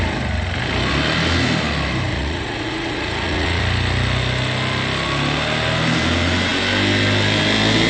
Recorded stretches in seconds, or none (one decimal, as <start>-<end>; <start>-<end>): 0.0-2.1; 3.6-7.9